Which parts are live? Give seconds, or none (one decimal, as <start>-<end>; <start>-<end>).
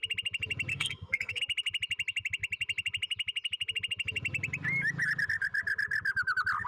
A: 0.0-0.7; 1.4-6.7